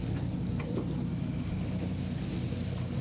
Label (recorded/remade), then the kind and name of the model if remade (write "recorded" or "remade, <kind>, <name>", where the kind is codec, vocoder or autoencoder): recorded